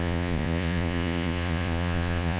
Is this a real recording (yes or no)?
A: no